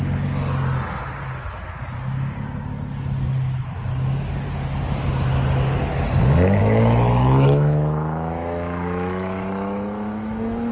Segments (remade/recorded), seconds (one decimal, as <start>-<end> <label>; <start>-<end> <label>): 0.0-6.6 recorded; 6.6-10.7 remade